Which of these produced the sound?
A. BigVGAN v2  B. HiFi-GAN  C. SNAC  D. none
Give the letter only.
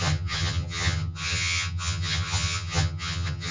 B